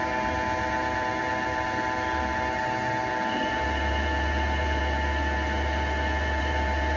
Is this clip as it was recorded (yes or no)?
yes